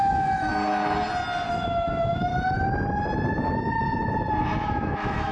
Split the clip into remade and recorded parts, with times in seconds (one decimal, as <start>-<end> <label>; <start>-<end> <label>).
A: 0.0-0.5 remade; 0.5-1.5 recorded; 1.5-2.3 remade; 2.3-4.3 recorded; 4.3-5.3 remade